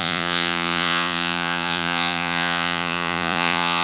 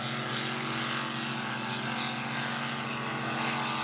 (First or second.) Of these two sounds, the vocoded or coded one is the first